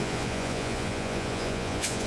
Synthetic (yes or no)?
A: yes